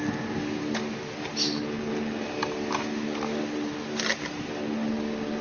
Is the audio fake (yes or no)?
no